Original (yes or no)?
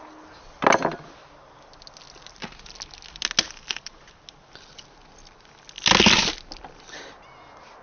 yes